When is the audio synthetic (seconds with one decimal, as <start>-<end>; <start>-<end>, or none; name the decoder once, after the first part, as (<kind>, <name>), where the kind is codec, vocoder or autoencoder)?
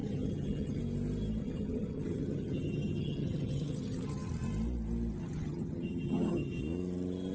0.0-0.8 (vocoder, HiFi-GAN); 1.4-4.3; 5.2-6.6